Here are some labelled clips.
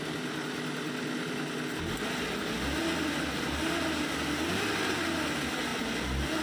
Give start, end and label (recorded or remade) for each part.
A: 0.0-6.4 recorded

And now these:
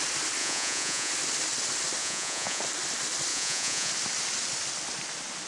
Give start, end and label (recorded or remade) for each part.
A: 0.0-0.4 recorded; 0.4-1.1 remade; 1.1-2.0 recorded; 2.0-2.6 remade; 2.6-3.3 recorded; 3.3-3.9 remade; 3.9-5.5 recorded

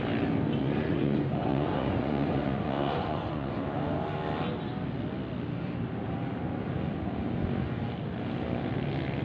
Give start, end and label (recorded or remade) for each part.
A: 0.0-0.6 recorded; 0.6-3.5 remade; 3.5-9.2 recorded

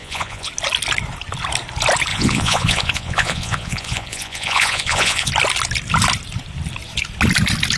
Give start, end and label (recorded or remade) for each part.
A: 0.0-0.5 remade; 0.5-2.1 recorded; 2.1-5.3 remade; 5.3-7.8 recorded

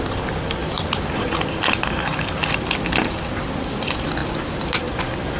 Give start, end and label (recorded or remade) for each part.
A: 0.0-5.4 recorded

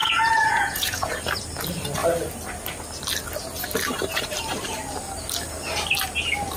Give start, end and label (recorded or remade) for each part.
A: 0.0-1.1 remade; 1.1-6.6 recorded